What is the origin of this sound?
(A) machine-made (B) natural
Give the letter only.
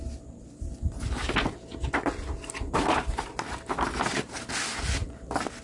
B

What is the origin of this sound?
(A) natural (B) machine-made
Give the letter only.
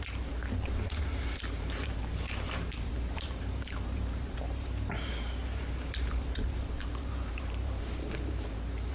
B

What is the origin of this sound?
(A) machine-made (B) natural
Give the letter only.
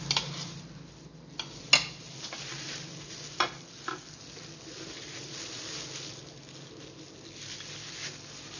B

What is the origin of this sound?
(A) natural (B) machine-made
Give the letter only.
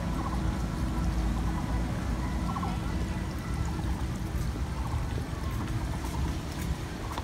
A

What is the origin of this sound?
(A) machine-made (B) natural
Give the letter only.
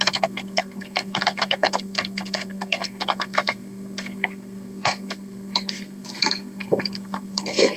A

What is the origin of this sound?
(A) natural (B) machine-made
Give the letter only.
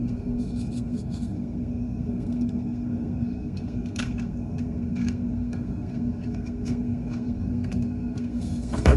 B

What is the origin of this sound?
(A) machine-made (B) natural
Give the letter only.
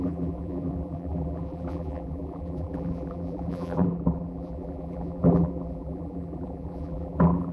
A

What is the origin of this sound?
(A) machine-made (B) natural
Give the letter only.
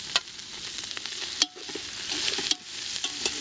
B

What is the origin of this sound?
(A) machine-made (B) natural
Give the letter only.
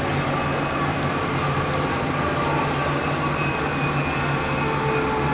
B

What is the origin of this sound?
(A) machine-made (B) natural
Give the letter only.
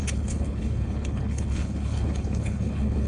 A